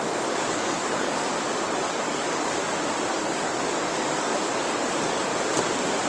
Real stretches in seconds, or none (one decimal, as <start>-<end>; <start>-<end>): 1.3-1.8; 2.6-3.1; 5.3-6.1